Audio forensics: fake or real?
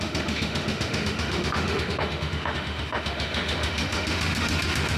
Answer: fake